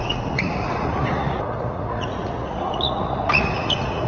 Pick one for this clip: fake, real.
fake